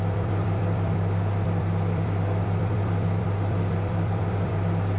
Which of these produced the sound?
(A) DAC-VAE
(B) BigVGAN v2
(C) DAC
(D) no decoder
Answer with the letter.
B